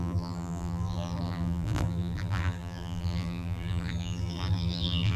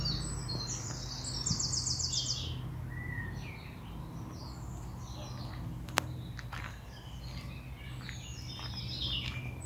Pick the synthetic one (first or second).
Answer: first